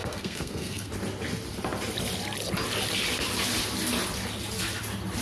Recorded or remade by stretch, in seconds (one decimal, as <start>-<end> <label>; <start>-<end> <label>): 0.0-0.9 remade; 0.9-5.2 recorded